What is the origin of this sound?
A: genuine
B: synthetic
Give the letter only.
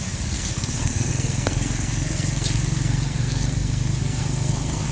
B